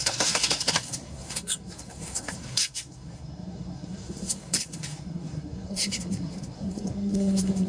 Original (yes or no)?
no